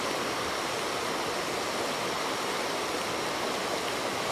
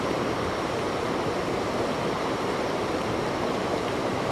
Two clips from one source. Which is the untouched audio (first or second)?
first